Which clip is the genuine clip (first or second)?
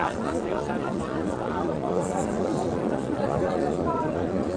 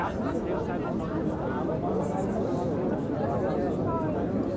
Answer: second